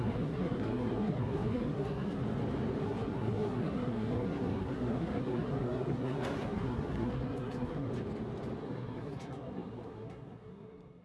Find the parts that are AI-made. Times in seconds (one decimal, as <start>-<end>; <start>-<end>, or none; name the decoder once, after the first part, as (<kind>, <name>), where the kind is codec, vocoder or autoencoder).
0.0-2.2 (codec, SNAC); 2.8-7.9; 8.6-11.0